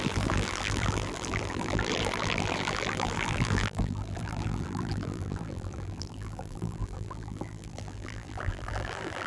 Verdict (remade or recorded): remade